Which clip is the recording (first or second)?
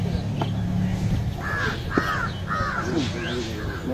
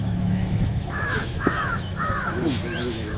first